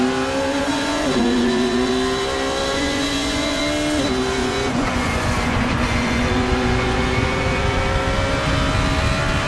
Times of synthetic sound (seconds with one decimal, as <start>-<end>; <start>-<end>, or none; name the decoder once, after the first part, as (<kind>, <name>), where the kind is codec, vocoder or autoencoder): 0.6-1.9 (vocoder, Vocos); 2.7-3.6; 4.4-7.8